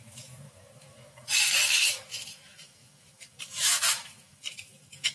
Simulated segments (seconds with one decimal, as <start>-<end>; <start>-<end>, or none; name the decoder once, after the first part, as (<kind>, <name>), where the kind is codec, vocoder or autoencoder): 0.0-5.1 (autoencoder, DAC-VAE)